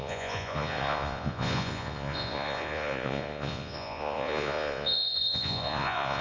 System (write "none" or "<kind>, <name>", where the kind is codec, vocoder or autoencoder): vocoder, Vocos